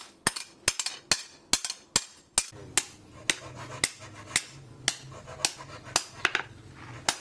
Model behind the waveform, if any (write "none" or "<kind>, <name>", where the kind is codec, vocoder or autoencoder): none